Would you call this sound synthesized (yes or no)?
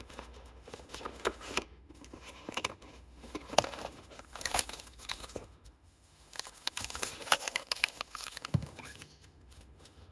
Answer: yes